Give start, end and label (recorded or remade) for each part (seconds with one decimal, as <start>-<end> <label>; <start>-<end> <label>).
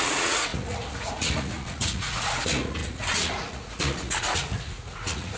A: 0.0-5.4 remade